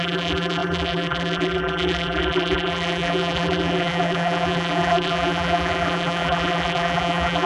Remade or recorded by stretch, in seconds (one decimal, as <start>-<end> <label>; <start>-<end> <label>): 0.0-7.5 remade